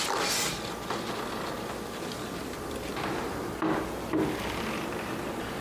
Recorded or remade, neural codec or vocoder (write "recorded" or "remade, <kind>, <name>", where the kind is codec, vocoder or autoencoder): recorded